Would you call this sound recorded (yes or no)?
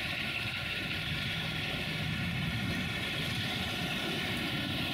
no